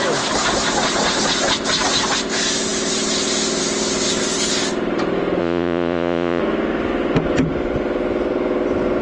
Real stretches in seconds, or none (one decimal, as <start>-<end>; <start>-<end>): 0.0-5.4; 6.4-9.0